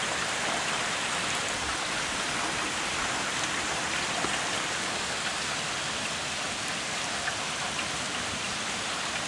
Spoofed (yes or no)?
yes